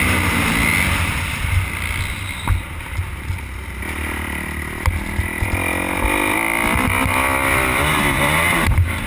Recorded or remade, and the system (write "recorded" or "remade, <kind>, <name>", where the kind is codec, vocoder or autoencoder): recorded